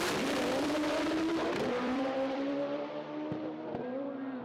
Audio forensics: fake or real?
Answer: fake